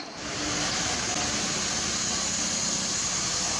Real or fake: real